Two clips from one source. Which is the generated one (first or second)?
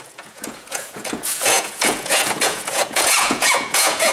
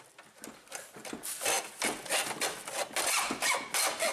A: first